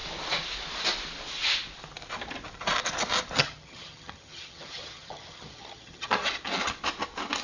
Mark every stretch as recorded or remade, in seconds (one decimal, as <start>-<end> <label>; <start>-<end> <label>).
0.0-3.4 recorded; 3.4-6.1 remade; 6.1-7.4 recorded